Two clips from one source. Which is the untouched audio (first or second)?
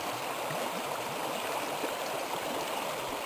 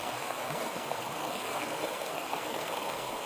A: first